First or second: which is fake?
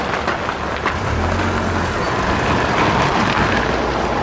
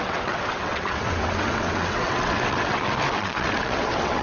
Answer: second